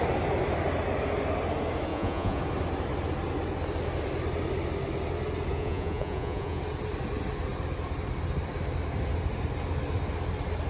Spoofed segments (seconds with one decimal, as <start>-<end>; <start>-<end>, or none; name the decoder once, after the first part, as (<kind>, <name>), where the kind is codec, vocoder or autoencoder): 1.9-2.4 (vocoder, Vocos); 5.5-6.6